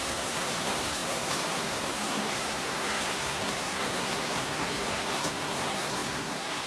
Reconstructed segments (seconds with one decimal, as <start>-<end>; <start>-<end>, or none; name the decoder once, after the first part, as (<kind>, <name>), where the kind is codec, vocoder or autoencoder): 0.0-6.7 (codec, SNAC)